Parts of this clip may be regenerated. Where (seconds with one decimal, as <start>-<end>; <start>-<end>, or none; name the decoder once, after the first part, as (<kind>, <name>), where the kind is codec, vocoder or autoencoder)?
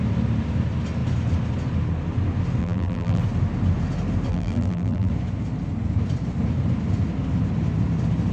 2.6-3.2 (vocoder, BigVGAN v2); 4.3-5.1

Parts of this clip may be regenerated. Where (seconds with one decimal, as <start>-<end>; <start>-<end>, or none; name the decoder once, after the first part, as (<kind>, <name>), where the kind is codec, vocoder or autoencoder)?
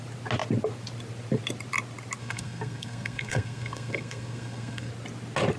2.2-4.9 (codec, SNAC)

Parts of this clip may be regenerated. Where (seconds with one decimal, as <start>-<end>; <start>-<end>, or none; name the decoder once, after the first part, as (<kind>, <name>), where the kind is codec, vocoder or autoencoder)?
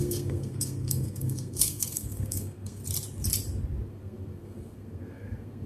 0.0-2.8 (codec, SNAC); 3.9-5.7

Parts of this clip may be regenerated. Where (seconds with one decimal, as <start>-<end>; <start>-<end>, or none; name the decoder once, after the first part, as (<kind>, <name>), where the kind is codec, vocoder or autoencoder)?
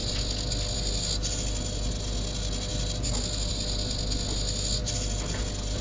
none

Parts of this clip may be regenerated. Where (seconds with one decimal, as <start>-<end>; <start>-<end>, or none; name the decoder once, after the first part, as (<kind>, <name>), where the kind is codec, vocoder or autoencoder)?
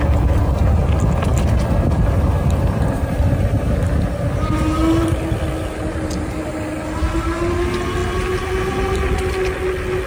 none